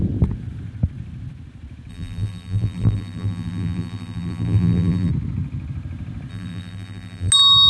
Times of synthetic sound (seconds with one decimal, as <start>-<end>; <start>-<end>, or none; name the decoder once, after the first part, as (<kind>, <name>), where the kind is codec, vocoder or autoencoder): 1.9-5.1 (vocoder, BigVGAN v2); 6.3-7.3